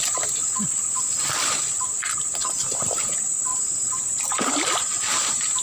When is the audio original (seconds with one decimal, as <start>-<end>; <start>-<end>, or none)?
0.0-2.4; 3.1-3.5; 4.5-5.6